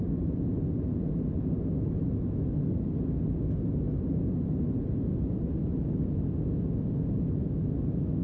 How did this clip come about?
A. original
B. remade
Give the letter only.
A